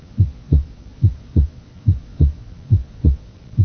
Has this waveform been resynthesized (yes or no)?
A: yes